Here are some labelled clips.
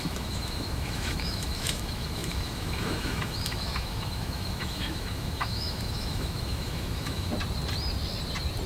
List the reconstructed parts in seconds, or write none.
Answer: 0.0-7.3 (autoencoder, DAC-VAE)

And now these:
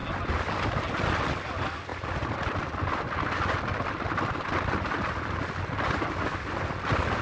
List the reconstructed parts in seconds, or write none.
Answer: none